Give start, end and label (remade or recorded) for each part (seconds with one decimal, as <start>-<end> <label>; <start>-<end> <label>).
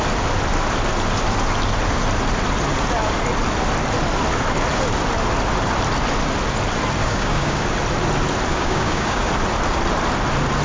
0.0-7.0 recorded; 7.0-7.6 remade; 7.6-8.5 recorded; 8.5-9.3 remade; 9.3-10.6 recorded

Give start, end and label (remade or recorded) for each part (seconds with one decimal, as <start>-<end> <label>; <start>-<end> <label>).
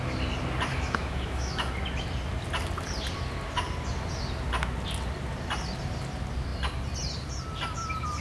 0.0-0.7 recorded; 0.7-1.7 remade; 1.7-8.2 recorded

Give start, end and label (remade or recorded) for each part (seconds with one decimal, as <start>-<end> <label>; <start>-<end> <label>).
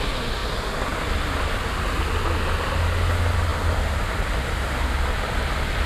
0.0-5.9 recorded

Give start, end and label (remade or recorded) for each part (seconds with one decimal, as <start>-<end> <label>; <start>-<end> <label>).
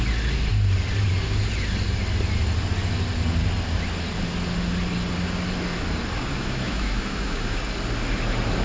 0.0-6.3 recorded; 6.3-7.6 remade; 7.6-8.6 recorded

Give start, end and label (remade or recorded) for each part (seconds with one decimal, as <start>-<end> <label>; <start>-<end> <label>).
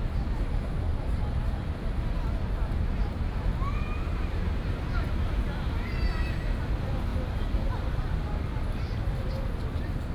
0.0-0.9 recorded; 0.9-5.0 remade; 5.0-7.1 recorded; 7.1-9.3 remade; 9.3-10.1 recorded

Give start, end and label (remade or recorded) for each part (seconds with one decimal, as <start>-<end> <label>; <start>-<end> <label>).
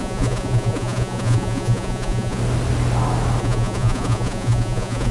0.0-2.4 remade; 2.4-3.4 recorded; 3.4-5.1 remade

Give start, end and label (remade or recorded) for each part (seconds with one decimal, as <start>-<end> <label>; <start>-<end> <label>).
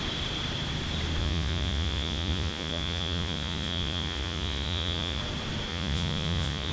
0.0-1.2 recorded; 1.2-5.2 remade; 5.2-5.7 recorded; 5.7-6.7 remade